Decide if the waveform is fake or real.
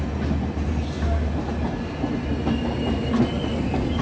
real